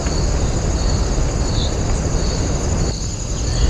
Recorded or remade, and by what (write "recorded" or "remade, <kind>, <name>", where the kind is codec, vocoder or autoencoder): remade, vocoder, BigVGAN v2